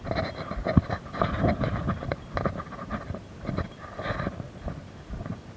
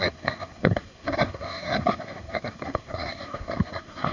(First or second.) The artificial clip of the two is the second